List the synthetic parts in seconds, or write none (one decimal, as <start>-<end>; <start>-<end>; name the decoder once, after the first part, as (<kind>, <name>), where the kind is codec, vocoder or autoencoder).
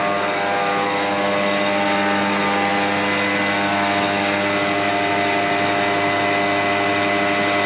none